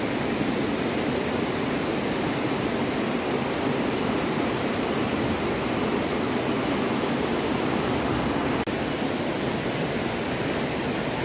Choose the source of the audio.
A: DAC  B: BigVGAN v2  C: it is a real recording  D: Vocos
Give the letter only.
C